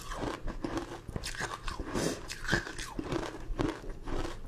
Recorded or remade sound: recorded